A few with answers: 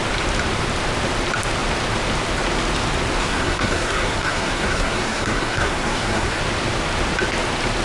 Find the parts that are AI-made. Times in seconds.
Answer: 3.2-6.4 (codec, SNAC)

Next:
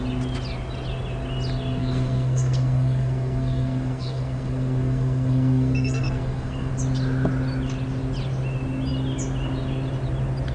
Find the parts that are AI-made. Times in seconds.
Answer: 1.8-6.7 (codec, SNAC)

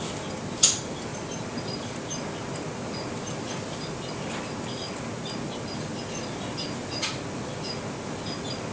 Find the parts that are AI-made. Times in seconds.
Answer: none

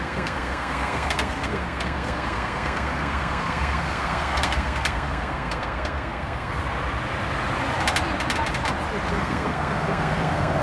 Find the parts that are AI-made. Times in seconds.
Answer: 0.0-6.6 (codec, SNAC); 9.1-10.6

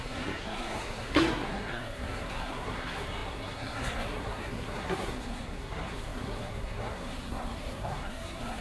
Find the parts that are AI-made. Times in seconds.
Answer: 0.0-8.6 (codec, SNAC)

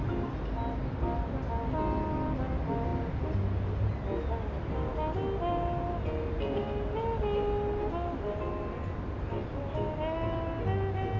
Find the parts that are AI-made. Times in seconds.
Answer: none

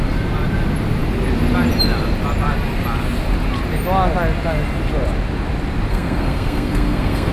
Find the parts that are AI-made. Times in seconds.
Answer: 5.9-7.3 (codec, SNAC)

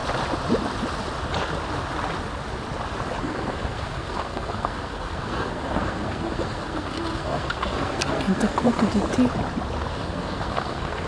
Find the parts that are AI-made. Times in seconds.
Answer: 3.2-8.9 (codec, SNAC); 9.8-11.1